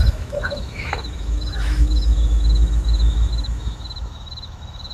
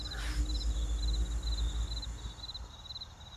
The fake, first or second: first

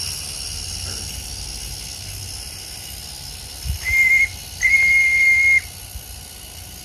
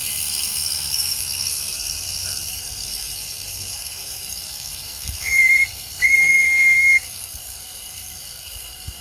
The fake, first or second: second